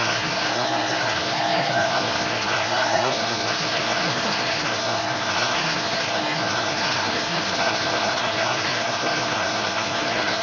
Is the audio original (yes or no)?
no